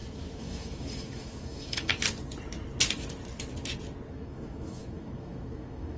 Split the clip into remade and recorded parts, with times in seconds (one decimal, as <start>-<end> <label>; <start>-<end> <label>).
0.0-1.9 remade; 1.9-4.1 recorded; 4.1-6.0 remade